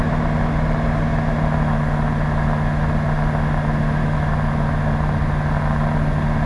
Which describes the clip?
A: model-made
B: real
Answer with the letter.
B